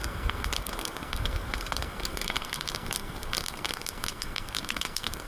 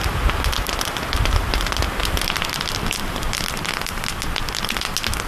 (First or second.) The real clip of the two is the second